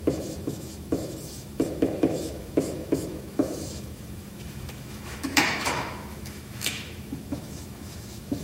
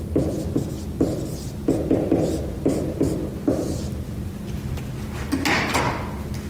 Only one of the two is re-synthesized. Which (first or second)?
first